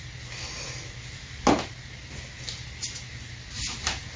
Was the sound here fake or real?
real